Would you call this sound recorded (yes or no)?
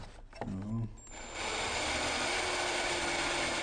yes